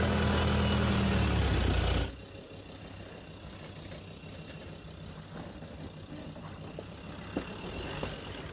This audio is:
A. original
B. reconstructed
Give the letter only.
A